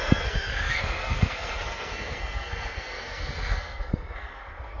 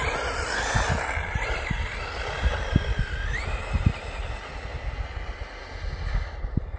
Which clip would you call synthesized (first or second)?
first